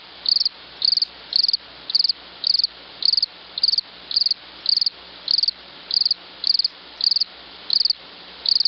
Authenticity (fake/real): real